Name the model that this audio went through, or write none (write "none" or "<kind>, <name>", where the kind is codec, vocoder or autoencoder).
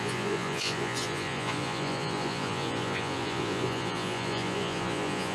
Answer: vocoder, Vocos